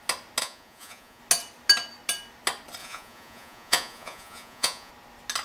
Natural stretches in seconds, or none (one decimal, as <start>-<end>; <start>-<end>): 0.0-0.4; 1.2-2.8; 4.9-5.4